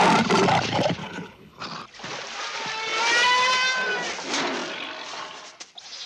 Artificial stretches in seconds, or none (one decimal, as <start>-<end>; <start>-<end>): 1.0-1.6